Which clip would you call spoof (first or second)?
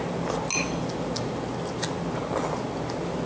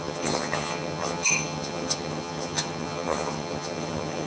second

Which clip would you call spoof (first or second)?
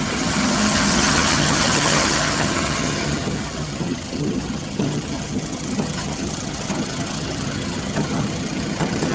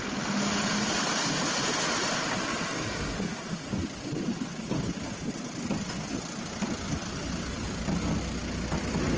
first